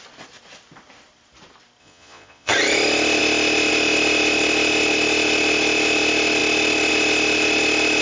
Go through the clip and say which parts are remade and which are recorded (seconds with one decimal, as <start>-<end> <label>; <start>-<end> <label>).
0.0-1.8 recorded; 1.8-2.5 remade; 2.5-8.0 recorded